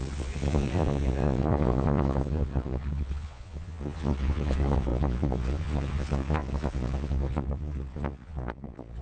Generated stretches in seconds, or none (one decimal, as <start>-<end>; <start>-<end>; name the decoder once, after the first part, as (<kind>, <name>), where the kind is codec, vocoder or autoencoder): 0.0-9.0 (vocoder, Vocos)